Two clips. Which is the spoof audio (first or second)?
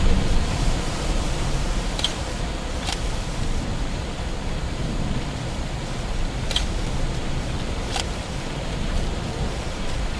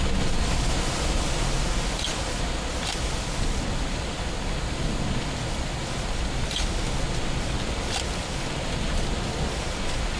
first